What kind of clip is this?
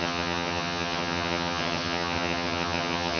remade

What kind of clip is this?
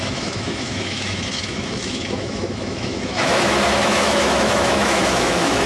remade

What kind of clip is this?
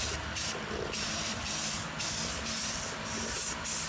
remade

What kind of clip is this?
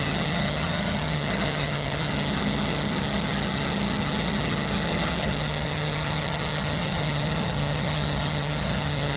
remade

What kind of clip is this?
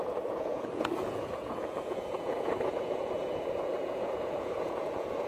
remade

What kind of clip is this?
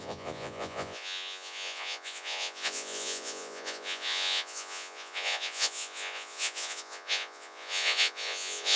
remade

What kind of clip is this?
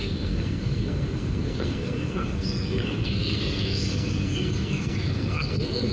remade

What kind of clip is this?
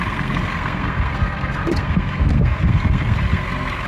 remade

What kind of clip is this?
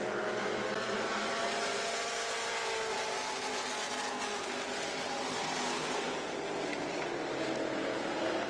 recorded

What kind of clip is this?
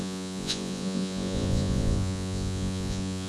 remade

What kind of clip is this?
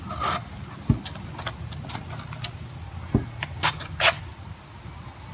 recorded